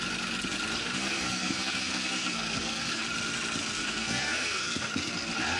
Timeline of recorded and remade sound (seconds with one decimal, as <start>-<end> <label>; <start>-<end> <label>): 0.0-0.8 recorded; 0.8-3.0 remade; 3.0-3.6 recorded; 3.6-5.1 remade; 5.1-5.6 recorded